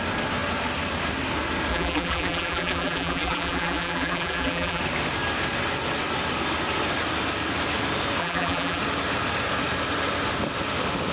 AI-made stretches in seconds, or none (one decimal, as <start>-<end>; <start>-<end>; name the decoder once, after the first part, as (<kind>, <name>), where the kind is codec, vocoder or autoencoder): 1.7-4.8 (vocoder, BigVGAN v2); 8.2-8.8